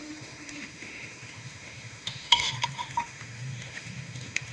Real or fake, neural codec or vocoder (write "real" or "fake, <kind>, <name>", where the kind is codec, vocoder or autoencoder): fake, autoencoder, DAC-VAE